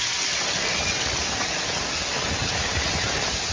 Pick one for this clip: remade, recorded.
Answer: recorded